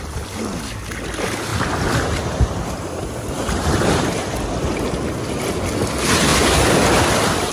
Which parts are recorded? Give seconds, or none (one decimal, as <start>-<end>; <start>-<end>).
0.0-1.5; 5.6-7.5